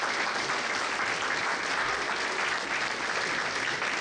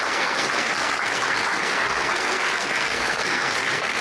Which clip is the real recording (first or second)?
first